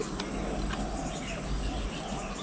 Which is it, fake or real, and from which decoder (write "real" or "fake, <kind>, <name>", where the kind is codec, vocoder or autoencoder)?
real